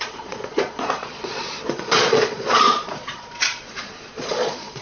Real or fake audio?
fake